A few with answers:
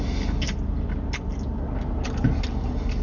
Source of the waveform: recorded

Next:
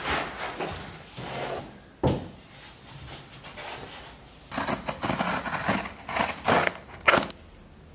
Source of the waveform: recorded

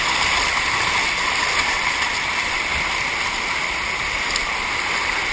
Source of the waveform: recorded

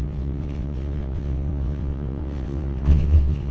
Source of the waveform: remade